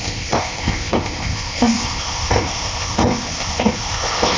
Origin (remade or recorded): remade